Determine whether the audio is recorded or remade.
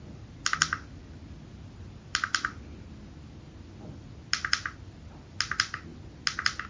recorded